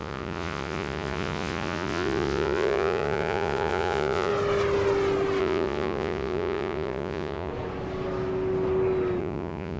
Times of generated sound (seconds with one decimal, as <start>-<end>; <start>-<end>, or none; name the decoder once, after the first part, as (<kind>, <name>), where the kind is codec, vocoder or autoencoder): 0.0-4.3 (vocoder, Vocos); 5.4-7.5; 9.2-9.8